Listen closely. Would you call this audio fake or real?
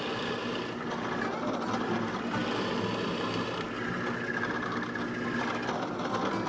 real